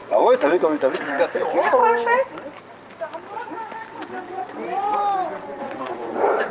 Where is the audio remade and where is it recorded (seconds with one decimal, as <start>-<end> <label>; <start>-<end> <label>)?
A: 0.0-1.8 remade; 1.8-4.2 recorded; 4.2-5.0 remade; 5.0-5.6 recorded; 5.6-6.5 remade